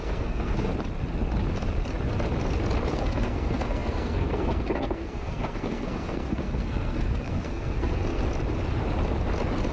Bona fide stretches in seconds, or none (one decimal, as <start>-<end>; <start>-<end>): 0.7-2.9; 8.2-9.7